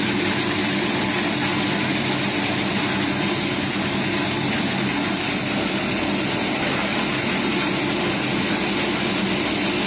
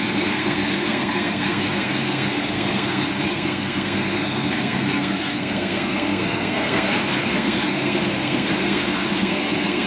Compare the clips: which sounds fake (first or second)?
second